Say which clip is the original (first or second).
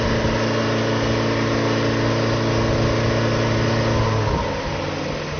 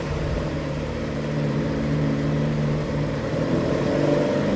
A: first